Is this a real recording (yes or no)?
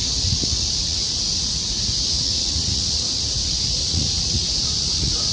no